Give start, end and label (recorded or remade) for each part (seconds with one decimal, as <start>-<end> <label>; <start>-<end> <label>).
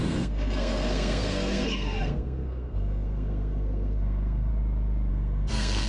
0.0-4.5 remade; 4.5-5.1 recorded; 5.1-5.9 remade